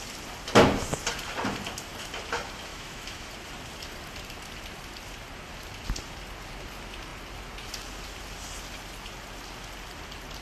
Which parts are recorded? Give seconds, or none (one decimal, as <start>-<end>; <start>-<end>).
0.0-2.7; 3.3-10.4